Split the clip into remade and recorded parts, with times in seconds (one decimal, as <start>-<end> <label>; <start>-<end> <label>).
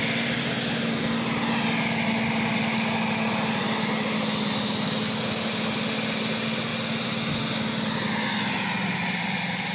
0.0-9.7 recorded